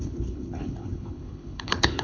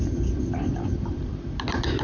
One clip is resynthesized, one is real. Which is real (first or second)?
second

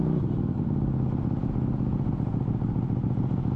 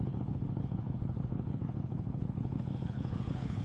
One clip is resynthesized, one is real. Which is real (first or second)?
first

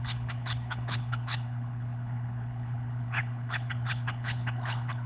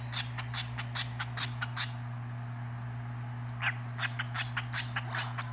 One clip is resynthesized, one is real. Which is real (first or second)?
second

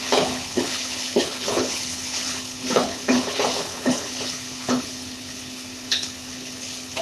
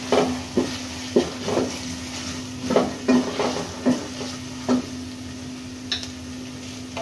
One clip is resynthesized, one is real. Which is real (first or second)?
second